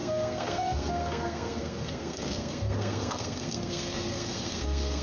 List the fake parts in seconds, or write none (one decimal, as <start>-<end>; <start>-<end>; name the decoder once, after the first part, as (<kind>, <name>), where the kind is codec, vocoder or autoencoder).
0.0-5.0 (codec, SNAC)